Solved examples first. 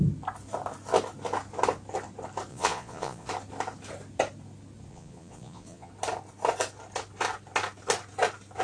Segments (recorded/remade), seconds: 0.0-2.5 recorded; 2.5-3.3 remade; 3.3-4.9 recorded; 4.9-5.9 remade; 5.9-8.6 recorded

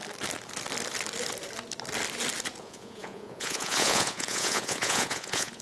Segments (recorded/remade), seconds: 0.0-2.6 recorded; 2.6-5.6 remade

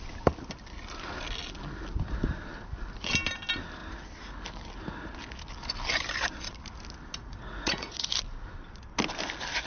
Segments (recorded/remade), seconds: 0.0-7.2 recorded; 7.2-8.1 remade; 8.1-9.7 recorded

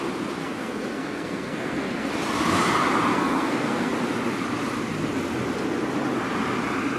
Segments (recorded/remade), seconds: 0.0-0.4 recorded; 0.4-2.1 remade; 2.1-3.1 recorded; 3.1-3.9 remade; 3.9-7.0 recorded

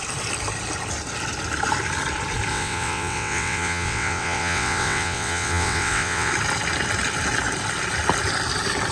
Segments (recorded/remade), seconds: 0.0-2.5 recorded; 2.5-6.3 remade; 6.3-8.9 recorded

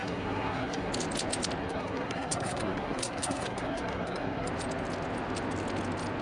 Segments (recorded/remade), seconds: 0.0-0.9 remade; 0.9-1.6 recorded; 1.6-4.5 remade; 4.5-6.2 recorded

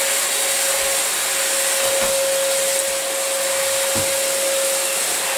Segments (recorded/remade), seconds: 0.0-5.4 recorded